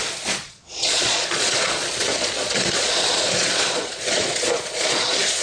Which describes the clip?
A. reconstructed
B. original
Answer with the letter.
A